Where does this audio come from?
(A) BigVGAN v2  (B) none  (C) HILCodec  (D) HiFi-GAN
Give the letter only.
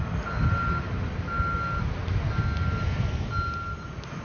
B